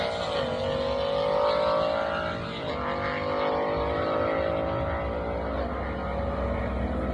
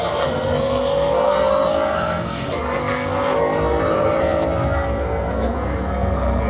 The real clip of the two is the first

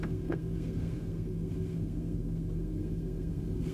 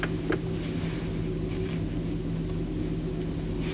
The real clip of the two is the second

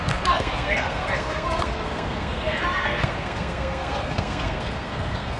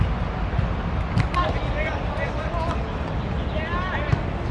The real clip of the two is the second